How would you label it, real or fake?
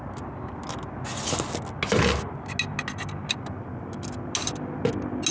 real